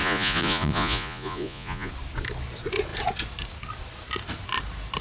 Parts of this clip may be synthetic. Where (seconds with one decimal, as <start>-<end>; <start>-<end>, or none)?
0.0-1.9